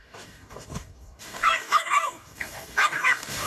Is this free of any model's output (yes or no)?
no